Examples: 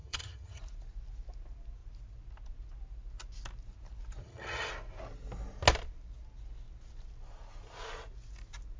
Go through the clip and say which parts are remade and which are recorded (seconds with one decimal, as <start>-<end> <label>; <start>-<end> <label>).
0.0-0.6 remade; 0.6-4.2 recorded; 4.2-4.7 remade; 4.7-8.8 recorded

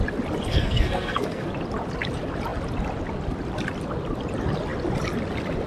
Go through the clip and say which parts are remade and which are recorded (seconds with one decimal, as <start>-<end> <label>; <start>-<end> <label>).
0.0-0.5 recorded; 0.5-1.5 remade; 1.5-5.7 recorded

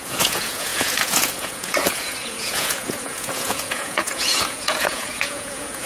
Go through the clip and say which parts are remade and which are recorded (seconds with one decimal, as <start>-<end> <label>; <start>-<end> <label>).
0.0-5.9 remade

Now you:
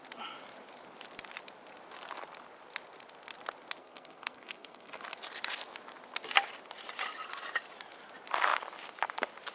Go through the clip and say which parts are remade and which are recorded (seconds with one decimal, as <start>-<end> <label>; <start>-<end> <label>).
0.0-3.8 recorded; 3.8-5.0 remade; 5.0-9.5 recorded

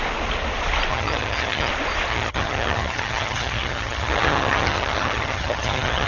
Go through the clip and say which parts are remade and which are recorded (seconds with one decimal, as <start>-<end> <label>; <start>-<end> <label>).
0.0-0.9 recorded; 0.9-1.7 remade; 1.7-2.1 recorded; 2.1-6.1 remade

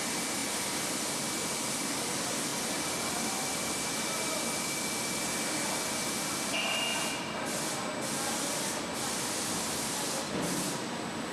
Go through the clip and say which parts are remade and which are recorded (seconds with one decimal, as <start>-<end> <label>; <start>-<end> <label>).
0.0-11.3 recorded